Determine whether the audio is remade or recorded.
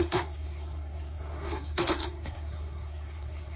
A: remade